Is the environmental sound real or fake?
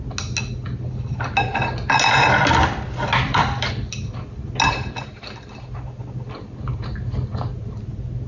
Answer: real